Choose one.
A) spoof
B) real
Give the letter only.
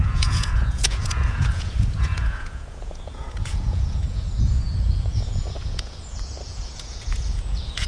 A